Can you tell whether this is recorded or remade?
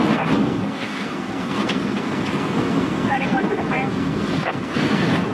remade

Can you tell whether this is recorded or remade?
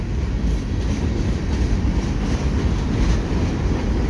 recorded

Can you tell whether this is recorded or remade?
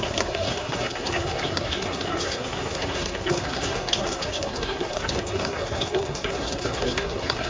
remade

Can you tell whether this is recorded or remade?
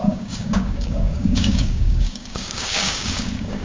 remade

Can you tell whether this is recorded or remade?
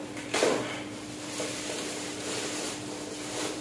recorded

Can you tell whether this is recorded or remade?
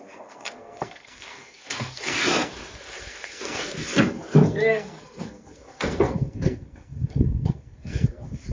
remade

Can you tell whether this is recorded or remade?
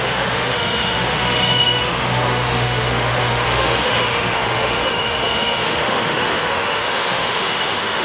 remade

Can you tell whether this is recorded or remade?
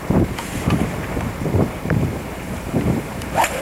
remade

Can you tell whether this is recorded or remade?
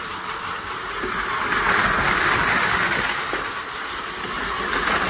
recorded